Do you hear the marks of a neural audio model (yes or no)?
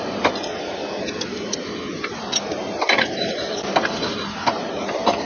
yes